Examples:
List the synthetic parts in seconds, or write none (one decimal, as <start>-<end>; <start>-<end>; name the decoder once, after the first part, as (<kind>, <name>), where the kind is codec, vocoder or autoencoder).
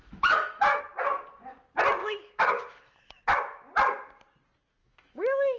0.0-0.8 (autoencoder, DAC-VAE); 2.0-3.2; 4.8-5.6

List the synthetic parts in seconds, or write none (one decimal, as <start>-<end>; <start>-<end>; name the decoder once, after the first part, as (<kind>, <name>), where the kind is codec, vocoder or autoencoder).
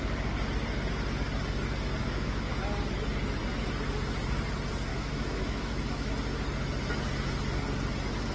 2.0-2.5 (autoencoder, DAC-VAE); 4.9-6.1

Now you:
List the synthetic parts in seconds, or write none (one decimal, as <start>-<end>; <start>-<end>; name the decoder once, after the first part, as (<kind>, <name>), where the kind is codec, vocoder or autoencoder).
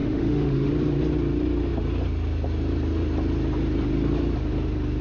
0.0-0.7 (autoencoder, DAC-VAE)